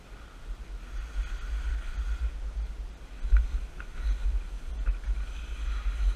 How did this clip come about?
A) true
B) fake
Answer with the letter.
A